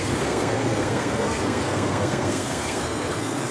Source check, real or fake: fake